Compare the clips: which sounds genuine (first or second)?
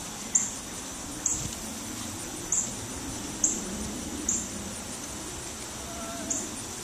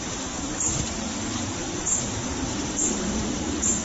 first